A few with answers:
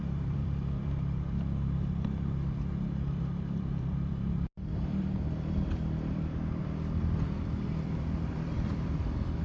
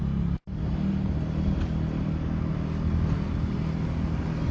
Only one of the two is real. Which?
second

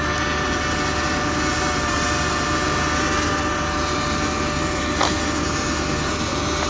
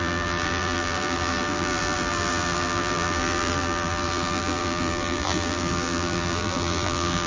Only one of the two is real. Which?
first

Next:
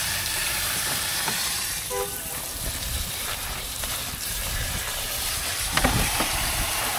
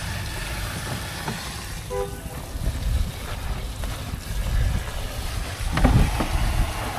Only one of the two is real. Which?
second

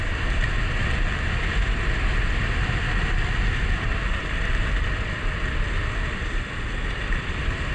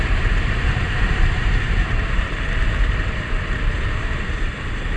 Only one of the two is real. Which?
first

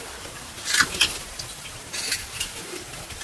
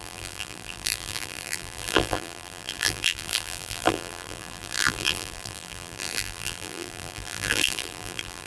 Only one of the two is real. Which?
first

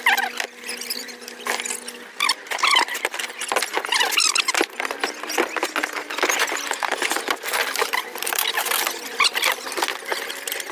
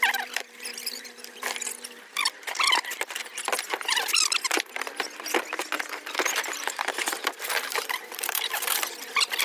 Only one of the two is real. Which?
first